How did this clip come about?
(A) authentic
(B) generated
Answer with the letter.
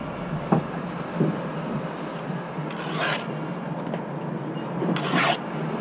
A